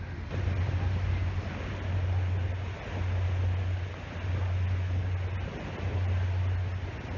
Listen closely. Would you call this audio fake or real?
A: real